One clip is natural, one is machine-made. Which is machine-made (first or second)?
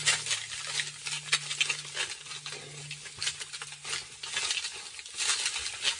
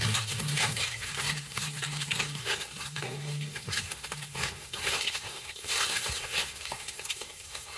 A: second